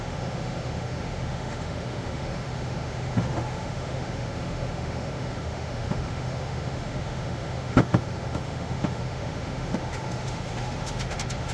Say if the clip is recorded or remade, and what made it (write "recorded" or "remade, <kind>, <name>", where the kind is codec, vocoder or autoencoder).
remade, autoencoder, DAC-VAE